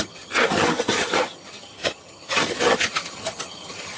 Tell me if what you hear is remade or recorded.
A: remade